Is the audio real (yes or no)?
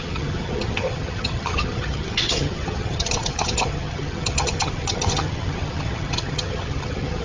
no